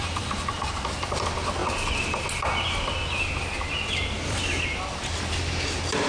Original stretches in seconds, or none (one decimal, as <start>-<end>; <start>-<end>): 0.0-6.1

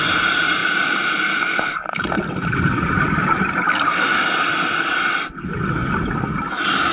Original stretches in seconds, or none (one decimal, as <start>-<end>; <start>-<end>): 0.0-0.6; 4.7-6.9

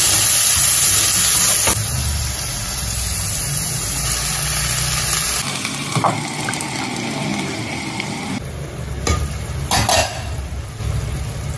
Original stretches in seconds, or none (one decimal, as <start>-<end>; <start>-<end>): 0.0-11.6

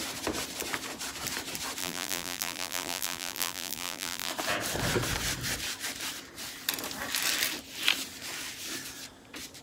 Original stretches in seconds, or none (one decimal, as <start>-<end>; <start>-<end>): 0.0-1.8; 4.3-9.6

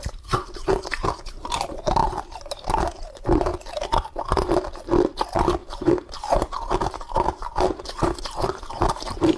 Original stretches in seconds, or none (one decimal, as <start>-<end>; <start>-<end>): 3.5-5.1

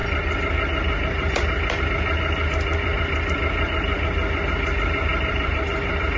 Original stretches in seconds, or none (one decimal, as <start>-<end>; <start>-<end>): 1.8-2.7; 3.2-5.1